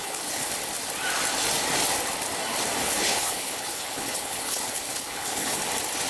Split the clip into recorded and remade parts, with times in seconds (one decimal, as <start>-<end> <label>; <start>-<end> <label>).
0.0-0.5 remade; 0.5-2.8 recorded; 2.8-5.6 remade; 5.6-6.1 recorded